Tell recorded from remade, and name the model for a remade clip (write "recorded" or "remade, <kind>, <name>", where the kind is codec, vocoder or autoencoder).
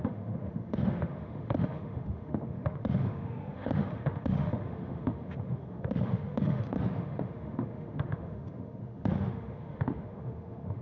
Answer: remade, autoencoder, DAC-VAE